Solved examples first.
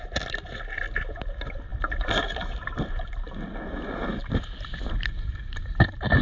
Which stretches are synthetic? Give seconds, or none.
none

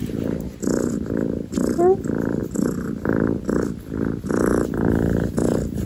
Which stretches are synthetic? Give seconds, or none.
1.1-2.4 (vocoder, BigVGAN v2)

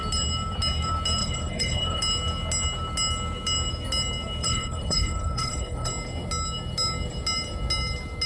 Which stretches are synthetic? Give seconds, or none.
1.2-2.0 (codec, HILCodec); 4.4-5.9